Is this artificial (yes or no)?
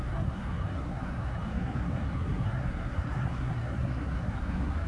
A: yes